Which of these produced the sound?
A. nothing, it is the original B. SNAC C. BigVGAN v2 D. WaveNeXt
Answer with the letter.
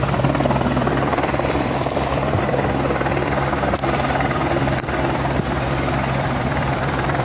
C